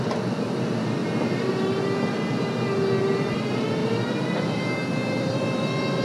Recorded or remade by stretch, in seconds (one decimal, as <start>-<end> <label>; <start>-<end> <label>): 0.0-3.8 recorded; 3.8-4.6 remade; 4.6-5.0 recorded; 5.0-5.6 remade; 5.6-6.0 recorded